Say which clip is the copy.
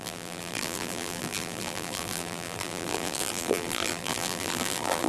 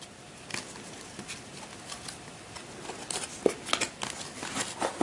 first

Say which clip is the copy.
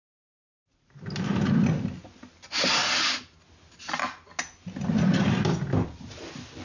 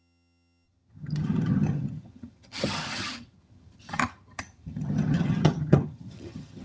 second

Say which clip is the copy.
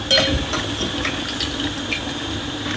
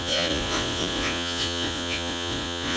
second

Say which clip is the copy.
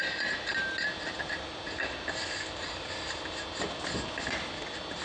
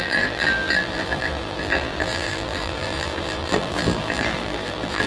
second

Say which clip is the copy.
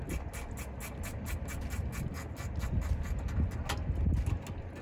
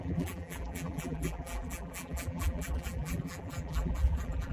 second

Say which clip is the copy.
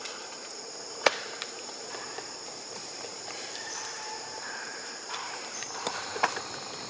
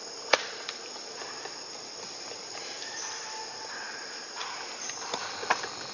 first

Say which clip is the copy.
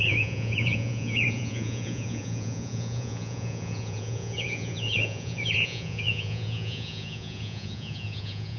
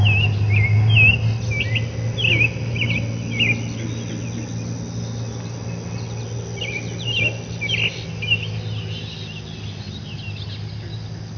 first